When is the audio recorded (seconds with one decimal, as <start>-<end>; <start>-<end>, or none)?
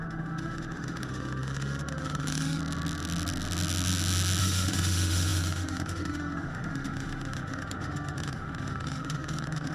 2.6-4.4